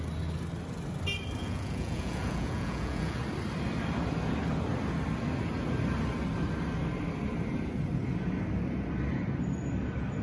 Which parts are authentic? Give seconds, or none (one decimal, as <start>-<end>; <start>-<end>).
0.0-1.4; 3.2-10.2